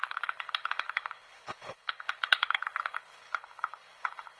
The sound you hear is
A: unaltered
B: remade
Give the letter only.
B